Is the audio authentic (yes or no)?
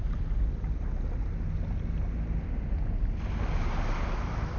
yes